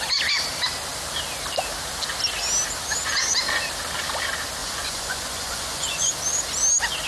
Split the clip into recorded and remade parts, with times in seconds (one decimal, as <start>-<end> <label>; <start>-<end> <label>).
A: 0.0-4.6 recorded; 4.6-6.1 remade; 6.1-7.1 recorded